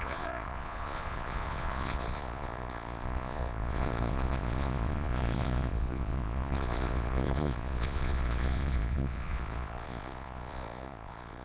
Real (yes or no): no